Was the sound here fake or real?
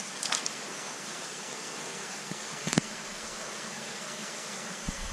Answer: fake